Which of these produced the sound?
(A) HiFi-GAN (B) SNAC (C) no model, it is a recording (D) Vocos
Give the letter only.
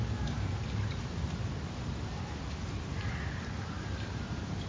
C